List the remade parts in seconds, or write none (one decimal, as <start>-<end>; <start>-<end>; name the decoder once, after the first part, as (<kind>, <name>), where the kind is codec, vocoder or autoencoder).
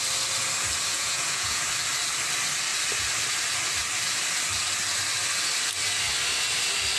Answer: 0.9-1.6 (vocoder, Vocos)